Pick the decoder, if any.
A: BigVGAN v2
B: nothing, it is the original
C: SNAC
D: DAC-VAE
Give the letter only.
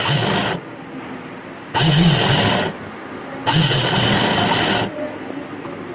B